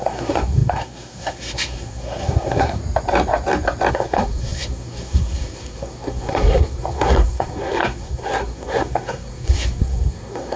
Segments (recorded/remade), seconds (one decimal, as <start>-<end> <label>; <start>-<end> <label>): 0.0-2.8 remade; 2.8-3.9 recorded; 3.9-10.6 remade